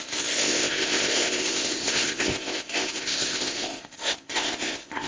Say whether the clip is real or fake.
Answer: fake